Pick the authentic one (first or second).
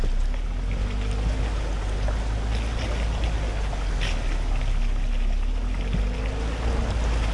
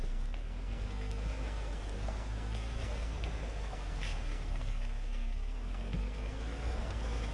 first